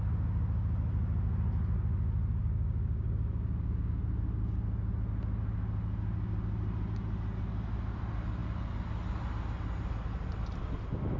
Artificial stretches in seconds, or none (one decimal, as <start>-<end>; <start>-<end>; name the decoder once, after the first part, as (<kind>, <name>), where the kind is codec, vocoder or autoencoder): 2.4-4.0 (codec, DAC)